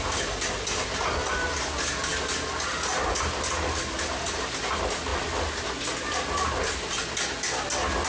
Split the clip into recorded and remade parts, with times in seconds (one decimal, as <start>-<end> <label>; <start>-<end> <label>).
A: 0.0-8.1 recorded